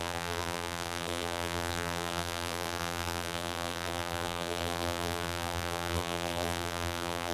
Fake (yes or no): yes